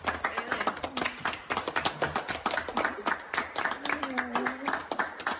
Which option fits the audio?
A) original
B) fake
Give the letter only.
A